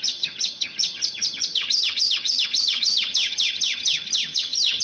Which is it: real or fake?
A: fake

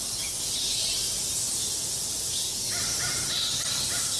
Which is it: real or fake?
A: real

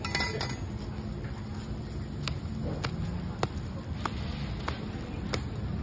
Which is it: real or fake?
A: real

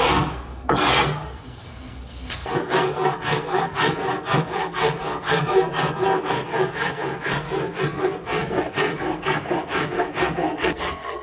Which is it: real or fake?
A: fake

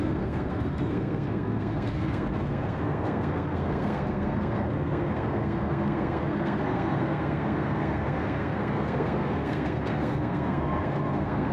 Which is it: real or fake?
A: fake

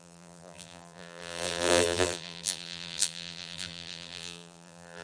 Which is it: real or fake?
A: fake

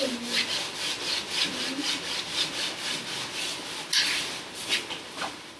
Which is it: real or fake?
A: real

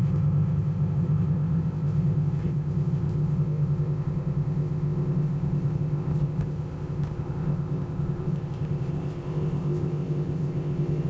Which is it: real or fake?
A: fake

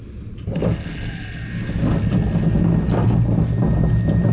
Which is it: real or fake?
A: real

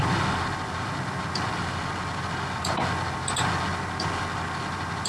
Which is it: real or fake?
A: real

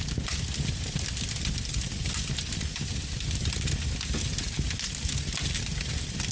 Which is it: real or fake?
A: real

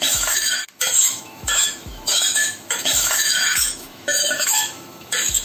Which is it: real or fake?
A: fake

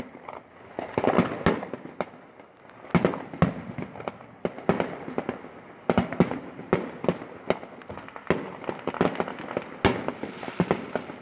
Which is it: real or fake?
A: real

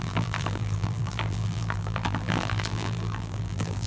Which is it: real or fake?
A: fake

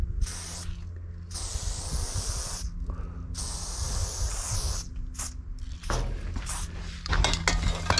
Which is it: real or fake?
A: real